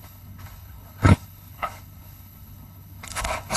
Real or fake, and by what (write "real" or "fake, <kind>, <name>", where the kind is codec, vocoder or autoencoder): fake, codec, HILCodec